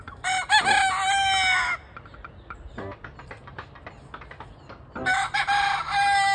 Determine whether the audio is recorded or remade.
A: recorded